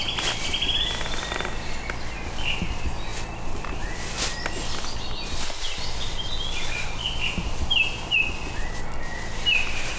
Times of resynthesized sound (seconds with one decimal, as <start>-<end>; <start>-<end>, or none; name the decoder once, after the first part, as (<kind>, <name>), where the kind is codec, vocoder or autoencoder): none